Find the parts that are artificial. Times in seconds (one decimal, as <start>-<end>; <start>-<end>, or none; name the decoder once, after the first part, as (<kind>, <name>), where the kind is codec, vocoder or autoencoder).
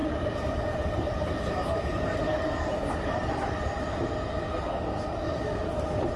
0.0-3.7 (vocoder, BigVGAN v2)